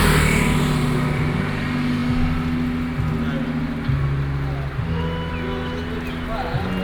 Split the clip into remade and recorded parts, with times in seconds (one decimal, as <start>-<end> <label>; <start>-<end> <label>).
0.0-6.8 recorded